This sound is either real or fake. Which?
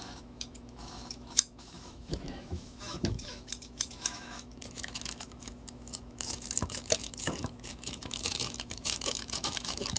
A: fake